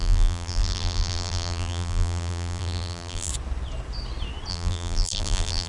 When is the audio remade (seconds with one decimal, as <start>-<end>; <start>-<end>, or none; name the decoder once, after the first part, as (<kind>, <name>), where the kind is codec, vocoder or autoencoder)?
0.0-3.3 (vocoder, BigVGAN v2); 4.5-5.7